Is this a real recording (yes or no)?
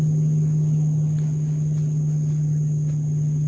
yes